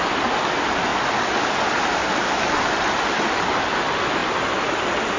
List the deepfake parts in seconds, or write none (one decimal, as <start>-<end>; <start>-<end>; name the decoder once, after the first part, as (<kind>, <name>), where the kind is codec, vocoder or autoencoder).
none